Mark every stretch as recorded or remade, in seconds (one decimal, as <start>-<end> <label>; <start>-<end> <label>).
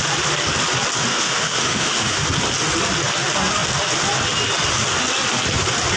0.0-1.1 recorded; 1.1-2.2 remade; 2.2-6.0 recorded